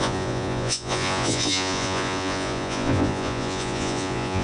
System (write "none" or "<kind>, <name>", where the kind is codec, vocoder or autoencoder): vocoder, Vocos